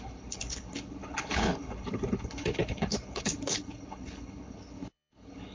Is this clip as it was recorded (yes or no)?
no